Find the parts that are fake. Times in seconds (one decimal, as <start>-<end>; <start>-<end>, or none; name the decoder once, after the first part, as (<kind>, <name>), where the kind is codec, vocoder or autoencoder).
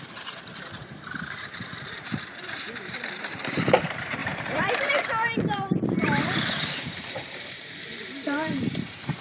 0.0-9.2 (vocoder, BigVGAN v2)